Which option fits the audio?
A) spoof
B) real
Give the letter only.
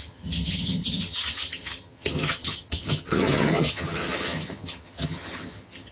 A